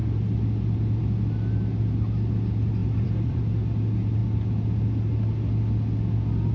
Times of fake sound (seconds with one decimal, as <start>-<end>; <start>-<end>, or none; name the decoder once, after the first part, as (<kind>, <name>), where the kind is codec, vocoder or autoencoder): 2.8-3.4 (vocoder, BigVGAN v2)